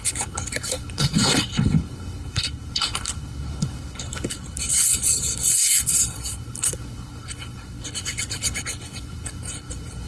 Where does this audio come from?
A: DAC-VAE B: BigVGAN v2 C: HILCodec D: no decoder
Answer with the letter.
C